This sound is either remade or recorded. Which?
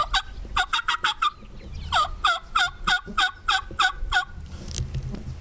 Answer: recorded